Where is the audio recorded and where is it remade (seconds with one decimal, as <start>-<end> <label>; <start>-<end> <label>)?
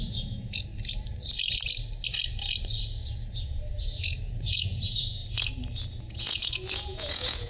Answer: 0.0-0.7 remade; 0.7-3.3 recorded; 3.3-5.2 remade; 5.2-6.0 recorded; 6.0-7.5 remade